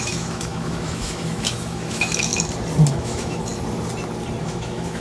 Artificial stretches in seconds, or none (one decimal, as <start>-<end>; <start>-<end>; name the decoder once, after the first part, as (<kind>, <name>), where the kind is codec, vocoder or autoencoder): 0.0-2.3 (autoencoder, DAC-VAE); 2.9-3.5; 4.4-5.0